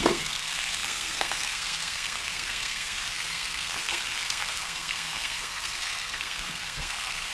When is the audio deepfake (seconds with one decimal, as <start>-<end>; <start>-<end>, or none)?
0.0-7.3